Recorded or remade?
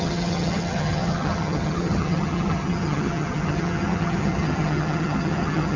remade